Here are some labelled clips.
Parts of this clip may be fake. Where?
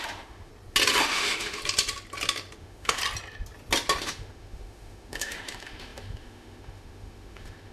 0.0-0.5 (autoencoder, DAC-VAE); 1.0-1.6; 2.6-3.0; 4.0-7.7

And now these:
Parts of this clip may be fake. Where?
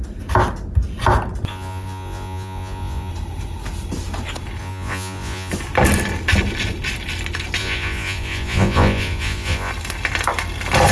1.5-3.1 (vocoder, Vocos); 4.6-5.5; 7.6-9.7